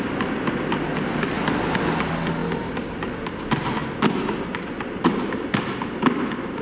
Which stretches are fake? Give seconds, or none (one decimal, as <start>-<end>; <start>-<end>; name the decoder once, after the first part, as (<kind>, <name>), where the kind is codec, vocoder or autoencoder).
2.4-3.1 (vocoder, BigVGAN v2)